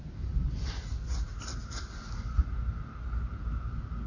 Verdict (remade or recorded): recorded